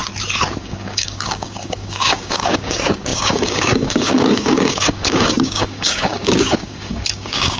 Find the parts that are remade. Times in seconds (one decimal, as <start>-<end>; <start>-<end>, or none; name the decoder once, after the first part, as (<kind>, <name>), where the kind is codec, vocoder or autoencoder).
0.6-7.6 (codec, DAC)